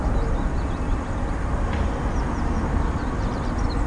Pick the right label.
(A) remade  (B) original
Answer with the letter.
B